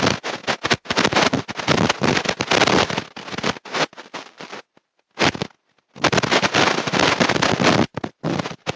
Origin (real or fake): real